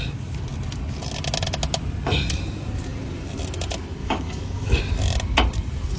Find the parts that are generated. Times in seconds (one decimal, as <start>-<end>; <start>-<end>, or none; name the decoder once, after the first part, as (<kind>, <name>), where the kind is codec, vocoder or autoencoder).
4.0-4.8 (codec, DAC)